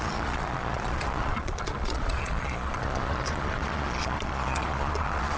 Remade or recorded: remade